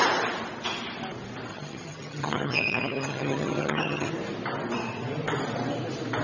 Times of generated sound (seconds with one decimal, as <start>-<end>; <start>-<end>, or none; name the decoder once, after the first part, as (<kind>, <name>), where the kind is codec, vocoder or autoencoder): 1.5-4.1 (vocoder, HiFi-GAN)